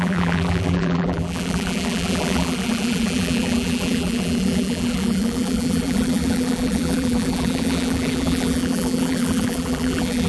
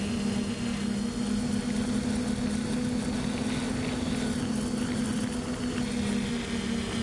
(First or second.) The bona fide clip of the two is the second